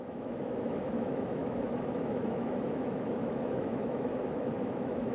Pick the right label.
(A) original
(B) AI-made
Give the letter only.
B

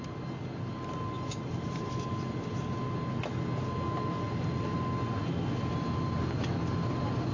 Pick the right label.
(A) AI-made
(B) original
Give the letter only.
B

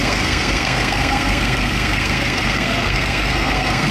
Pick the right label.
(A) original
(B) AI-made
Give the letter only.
B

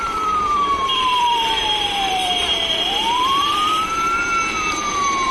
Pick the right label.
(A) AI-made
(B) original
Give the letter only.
A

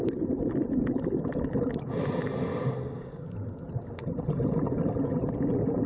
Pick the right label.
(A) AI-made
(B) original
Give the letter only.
B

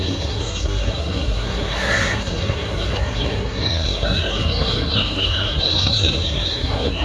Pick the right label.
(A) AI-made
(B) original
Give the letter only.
A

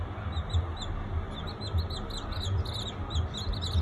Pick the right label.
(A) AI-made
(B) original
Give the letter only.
B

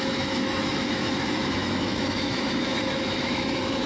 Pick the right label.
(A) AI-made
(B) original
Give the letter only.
A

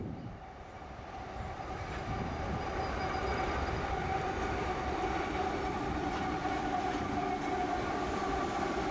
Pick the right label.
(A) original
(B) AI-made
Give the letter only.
B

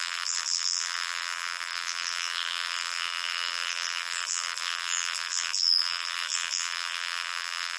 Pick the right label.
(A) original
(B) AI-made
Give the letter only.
B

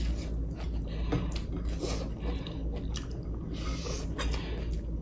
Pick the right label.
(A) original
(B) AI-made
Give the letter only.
A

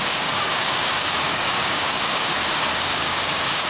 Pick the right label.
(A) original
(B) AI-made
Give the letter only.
B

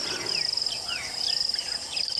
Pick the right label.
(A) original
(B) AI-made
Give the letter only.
B